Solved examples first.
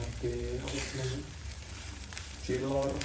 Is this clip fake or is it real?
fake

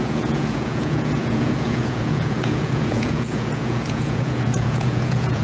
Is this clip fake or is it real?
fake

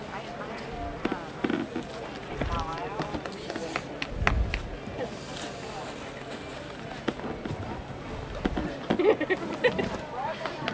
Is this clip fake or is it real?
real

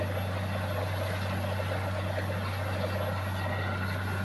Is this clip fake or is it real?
real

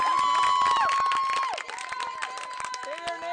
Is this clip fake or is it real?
real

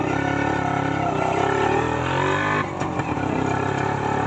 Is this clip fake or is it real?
real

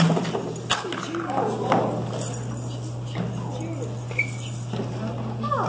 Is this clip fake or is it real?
real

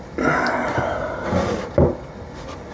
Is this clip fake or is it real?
real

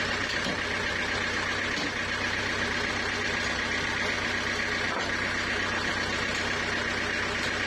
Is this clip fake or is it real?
real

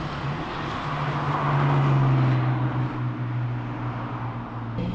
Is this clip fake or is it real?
real